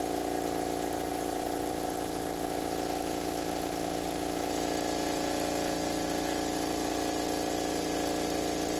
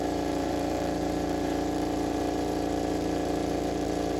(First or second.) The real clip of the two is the first